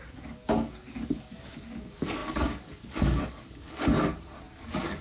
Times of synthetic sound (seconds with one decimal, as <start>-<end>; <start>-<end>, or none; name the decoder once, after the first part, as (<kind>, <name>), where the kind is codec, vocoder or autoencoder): 0.0-4.1 (codec, DAC); 4.6-5.0